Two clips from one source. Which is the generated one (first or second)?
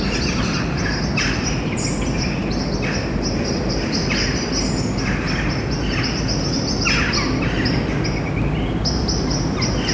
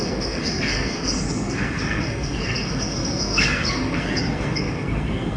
second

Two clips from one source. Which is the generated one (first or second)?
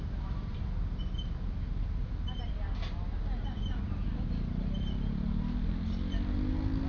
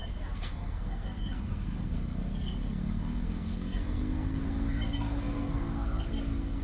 second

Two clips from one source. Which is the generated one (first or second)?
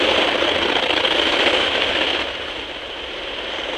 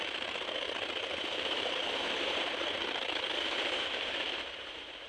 second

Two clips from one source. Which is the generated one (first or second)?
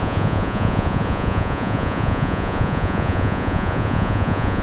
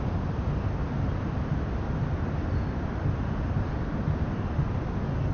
first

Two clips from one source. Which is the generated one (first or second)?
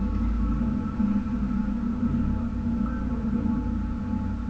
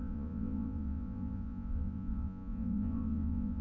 second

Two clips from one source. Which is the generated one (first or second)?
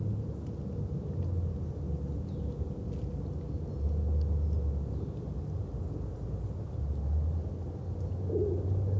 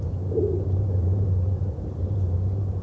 second